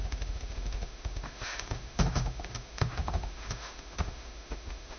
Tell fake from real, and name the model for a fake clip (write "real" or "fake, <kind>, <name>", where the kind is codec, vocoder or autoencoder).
fake, autoencoder, DAC-VAE